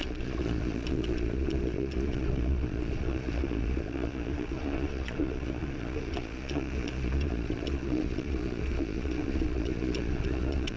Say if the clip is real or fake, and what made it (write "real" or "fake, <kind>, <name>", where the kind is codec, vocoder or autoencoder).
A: fake, vocoder, Vocos